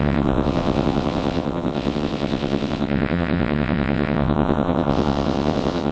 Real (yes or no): no